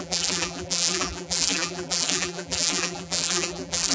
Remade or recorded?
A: remade